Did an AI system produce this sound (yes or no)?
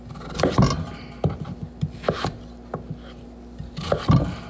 no